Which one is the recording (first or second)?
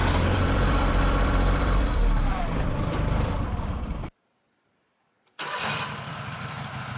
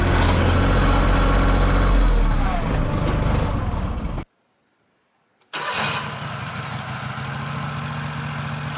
second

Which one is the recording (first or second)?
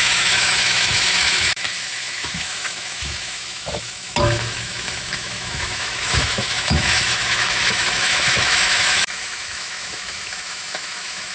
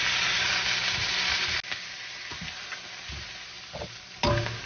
second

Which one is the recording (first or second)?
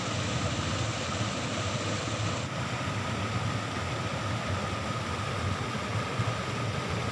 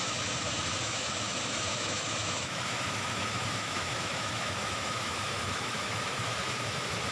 first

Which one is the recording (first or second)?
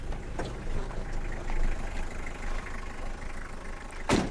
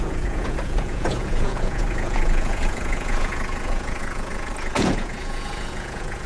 first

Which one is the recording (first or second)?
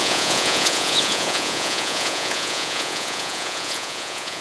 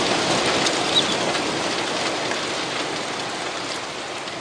second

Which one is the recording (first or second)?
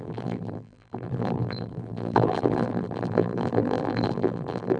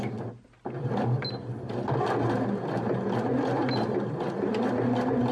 second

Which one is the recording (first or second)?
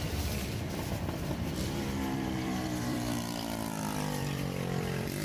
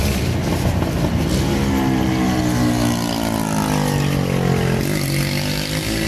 second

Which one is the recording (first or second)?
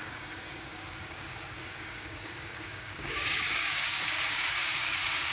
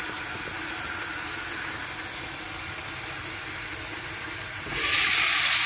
second